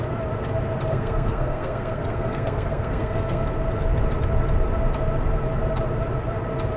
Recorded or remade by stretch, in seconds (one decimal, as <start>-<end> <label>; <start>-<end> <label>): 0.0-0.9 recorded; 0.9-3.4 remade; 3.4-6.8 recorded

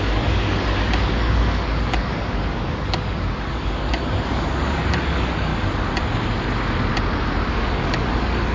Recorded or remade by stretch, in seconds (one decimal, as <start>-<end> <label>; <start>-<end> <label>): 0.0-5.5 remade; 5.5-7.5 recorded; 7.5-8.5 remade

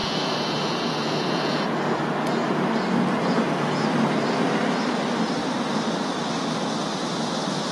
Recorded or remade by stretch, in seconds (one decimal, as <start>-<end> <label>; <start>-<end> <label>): 0.0-2.0 remade; 2.0-7.7 recorded